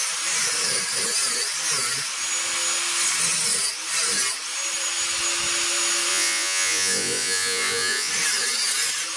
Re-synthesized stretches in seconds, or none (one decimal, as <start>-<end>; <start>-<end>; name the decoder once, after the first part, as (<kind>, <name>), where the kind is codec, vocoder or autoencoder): 6.1-8.1 (vocoder, Vocos)